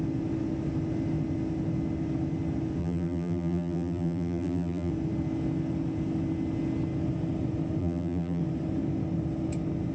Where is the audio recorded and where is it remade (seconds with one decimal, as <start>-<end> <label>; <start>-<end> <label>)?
0.0-2.8 recorded; 2.8-4.9 remade; 4.9-7.8 recorded; 7.8-8.4 remade; 8.4-9.9 recorded